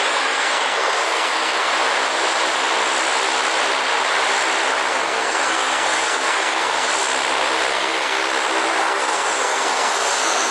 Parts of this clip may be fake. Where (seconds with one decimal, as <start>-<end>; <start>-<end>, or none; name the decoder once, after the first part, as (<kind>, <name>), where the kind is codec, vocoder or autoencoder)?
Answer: 0.0-1.7 (codec, SNAC); 4.9-6.9; 7.7-8.2; 8.8-10.5